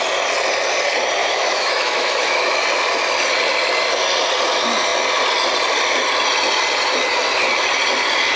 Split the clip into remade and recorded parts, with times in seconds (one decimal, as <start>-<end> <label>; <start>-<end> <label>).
0.0-1.2 recorded; 1.2-2.6 remade; 2.6-8.4 recorded